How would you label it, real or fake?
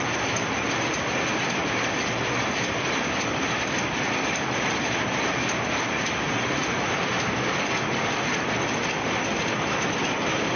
real